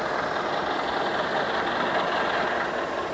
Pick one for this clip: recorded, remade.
recorded